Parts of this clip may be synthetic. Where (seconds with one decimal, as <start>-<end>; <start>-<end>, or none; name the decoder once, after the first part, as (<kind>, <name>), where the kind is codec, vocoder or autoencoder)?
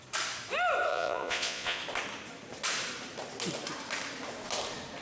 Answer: 0.9-1.8 (vocoder, Vocos)